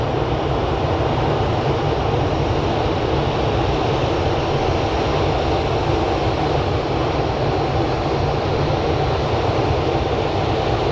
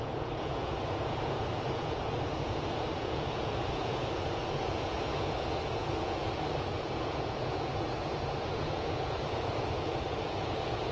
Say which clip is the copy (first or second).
second